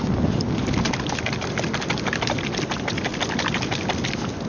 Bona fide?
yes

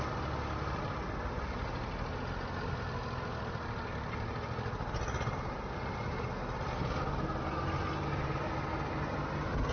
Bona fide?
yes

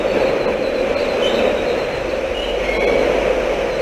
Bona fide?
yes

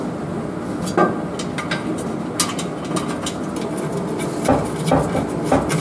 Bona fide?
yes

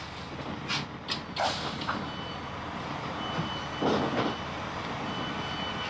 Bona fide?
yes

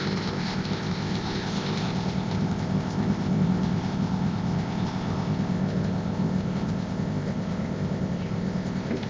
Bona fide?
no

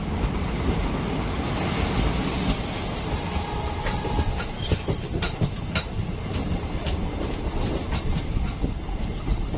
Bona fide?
yes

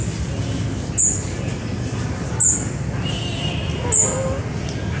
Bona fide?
yes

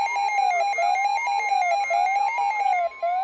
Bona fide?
yes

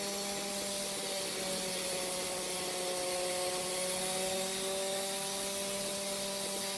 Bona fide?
yes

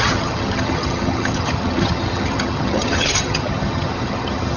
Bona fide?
no